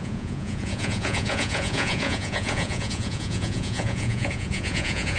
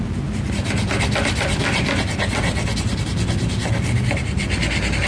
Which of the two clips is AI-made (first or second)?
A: first